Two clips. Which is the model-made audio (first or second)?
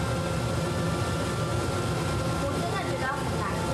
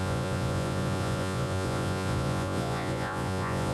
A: second